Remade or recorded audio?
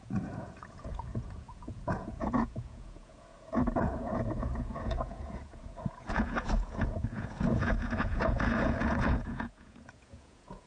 remade